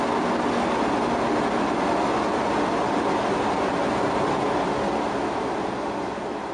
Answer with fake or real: real